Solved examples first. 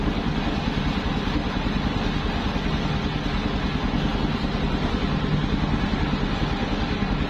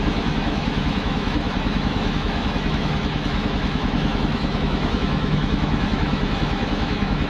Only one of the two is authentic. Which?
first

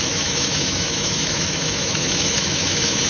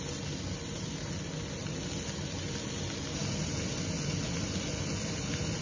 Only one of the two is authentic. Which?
second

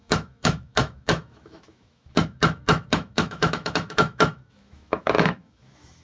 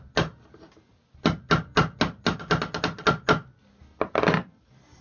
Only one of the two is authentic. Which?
second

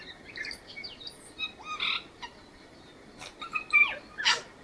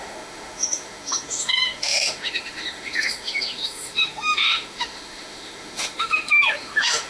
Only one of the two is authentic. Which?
first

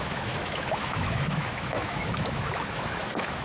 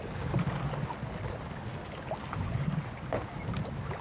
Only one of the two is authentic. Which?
second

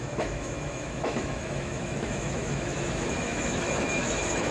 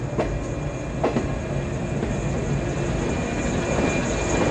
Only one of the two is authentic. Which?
second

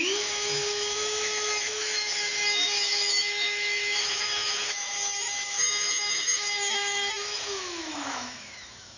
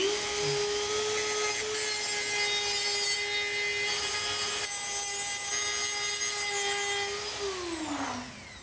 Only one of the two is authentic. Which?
second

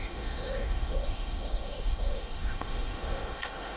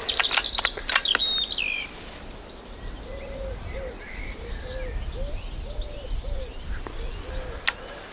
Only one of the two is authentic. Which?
second